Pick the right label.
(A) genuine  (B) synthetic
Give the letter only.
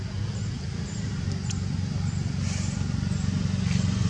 A